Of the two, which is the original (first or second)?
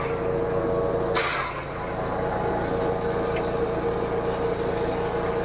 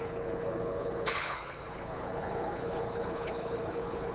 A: first